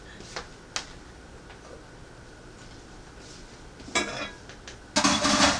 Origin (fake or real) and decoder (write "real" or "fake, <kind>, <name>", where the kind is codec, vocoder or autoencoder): real